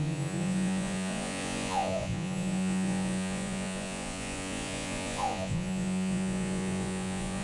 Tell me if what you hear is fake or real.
fake